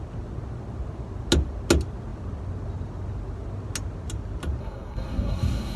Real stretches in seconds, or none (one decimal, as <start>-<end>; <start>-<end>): 0.0-4.6